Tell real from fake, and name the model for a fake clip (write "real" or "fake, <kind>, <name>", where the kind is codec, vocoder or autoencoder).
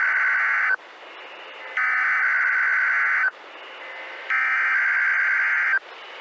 real